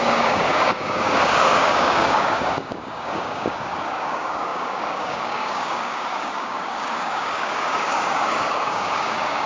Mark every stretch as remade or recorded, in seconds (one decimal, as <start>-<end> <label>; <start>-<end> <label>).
0.0-9.5 remade